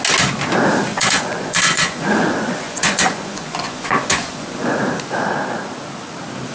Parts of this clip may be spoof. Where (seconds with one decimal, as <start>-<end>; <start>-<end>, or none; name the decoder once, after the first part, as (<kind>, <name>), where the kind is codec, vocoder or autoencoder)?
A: 0.9-4.8 (vocoder, Vocos)